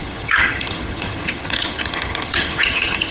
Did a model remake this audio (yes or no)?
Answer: yes